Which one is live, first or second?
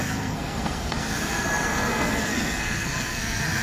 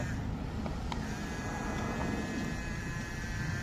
second